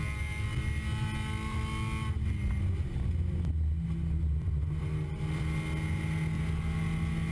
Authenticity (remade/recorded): recorded